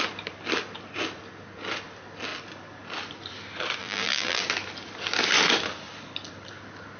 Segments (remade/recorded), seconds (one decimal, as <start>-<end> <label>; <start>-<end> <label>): 0.0-3.8 recorded; 3.8-4.4 remade; 4.4-7.0 recorded